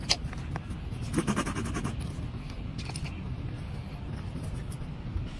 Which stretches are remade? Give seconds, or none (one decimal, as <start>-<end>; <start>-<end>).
none